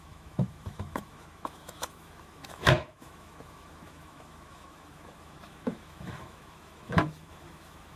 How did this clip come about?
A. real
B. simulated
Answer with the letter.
B